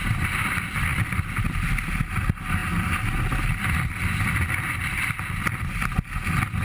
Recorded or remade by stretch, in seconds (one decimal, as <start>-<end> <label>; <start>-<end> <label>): 0.0-6.6 recorded